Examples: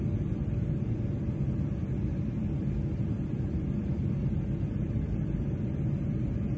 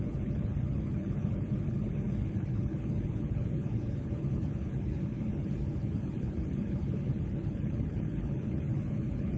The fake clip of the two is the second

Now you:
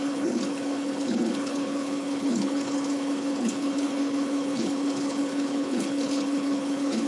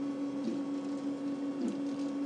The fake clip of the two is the first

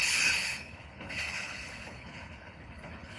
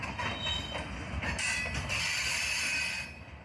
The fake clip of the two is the first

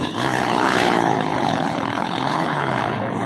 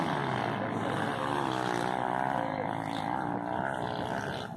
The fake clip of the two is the first